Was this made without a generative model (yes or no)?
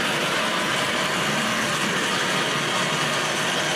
yes